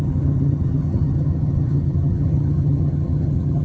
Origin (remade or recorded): remade